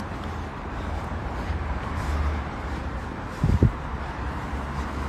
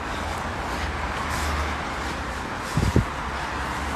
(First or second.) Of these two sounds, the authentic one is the second